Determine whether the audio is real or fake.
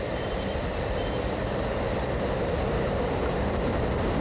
real